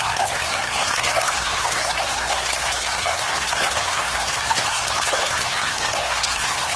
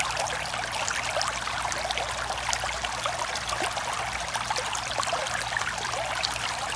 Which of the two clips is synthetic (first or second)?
first